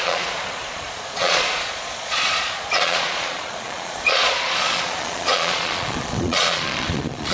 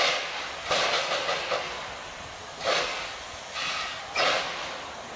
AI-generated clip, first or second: first